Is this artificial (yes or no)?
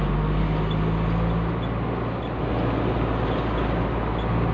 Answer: no